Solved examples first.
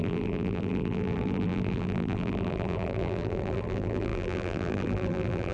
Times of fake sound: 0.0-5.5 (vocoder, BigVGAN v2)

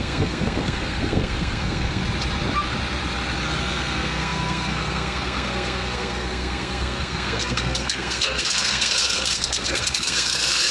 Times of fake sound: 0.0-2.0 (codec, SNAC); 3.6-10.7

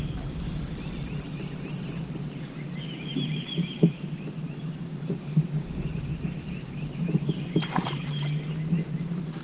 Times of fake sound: 3.6-5.5 (vocoder, BigVGAN v2); 5.9-8.1

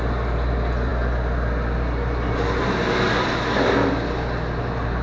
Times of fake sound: none

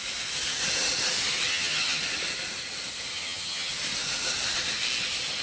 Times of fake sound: 1.5-2.0 (vocoder, HiFi-GAN); 3.1-3.7

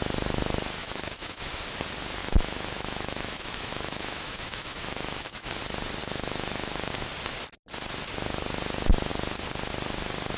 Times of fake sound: 0.8-1.6 (autoencoder, DAC-VAE); 2.2-5.6; 6.0-6.9